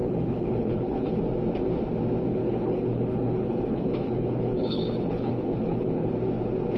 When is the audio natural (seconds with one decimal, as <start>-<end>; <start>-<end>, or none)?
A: 1.2-2.3; 6.1-6.8